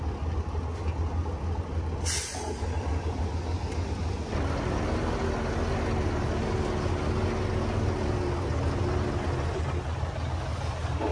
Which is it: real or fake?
real